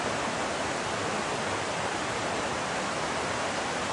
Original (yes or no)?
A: yes